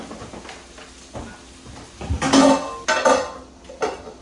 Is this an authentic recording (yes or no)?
yes